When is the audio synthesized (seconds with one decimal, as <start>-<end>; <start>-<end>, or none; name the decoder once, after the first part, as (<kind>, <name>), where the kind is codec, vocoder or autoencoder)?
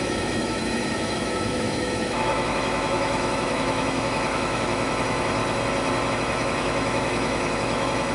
0.0-5.4 (autoencoder, DAC-VAE); 6.1-8.1